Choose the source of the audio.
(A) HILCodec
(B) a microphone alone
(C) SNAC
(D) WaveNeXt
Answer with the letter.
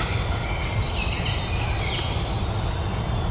B